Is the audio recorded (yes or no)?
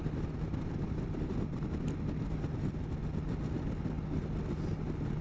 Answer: yes